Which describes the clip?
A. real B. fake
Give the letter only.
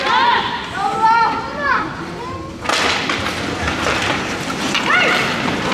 A